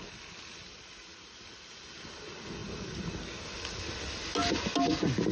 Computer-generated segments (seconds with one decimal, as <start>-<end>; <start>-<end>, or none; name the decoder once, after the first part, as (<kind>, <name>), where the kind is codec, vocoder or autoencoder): none